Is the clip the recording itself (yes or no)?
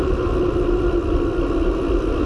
yes